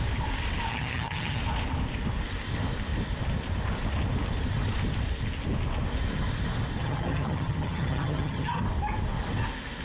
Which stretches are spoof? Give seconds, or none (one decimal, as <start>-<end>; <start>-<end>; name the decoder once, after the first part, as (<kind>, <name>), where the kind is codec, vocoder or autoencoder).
0.7-1.4 (vocoder, HiFi-GAN); 6.8-8.6